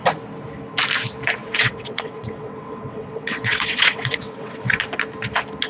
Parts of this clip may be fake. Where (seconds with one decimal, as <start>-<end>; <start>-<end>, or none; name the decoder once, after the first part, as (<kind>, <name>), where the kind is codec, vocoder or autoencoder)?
1.4-4.8 (vocoder, WaveNeXt)